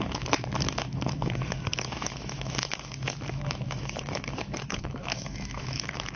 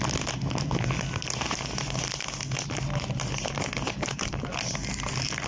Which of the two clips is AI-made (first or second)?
first